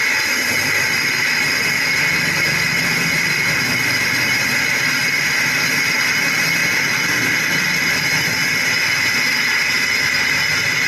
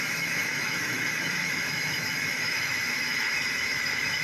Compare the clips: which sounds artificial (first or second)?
second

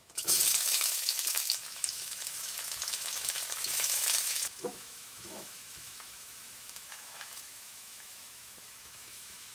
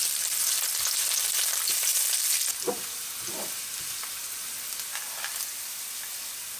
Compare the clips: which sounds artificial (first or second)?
first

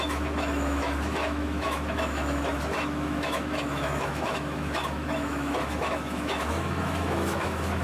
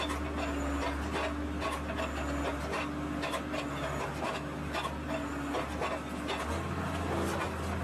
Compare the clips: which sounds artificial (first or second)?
first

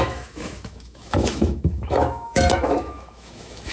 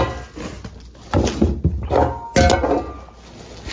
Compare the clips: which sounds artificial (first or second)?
first